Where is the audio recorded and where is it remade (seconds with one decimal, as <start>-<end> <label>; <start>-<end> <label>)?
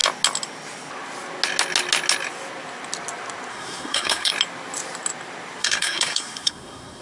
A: 0.0-3.5 recorded; 3.5-4.3 remade; 4.3-5.6 recorded; 5.6-7.0 remade